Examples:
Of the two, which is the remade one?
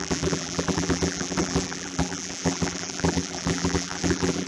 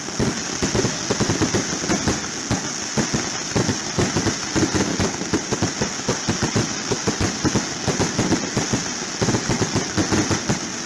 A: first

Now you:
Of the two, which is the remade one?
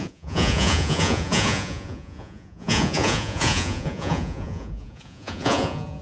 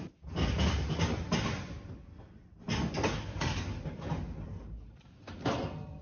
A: first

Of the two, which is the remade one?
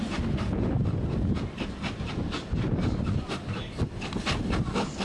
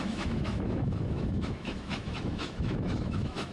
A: second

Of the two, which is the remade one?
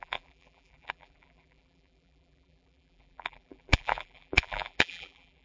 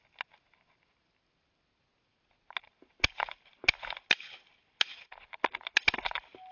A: first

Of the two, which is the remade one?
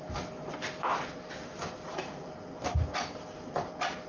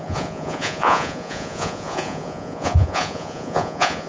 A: second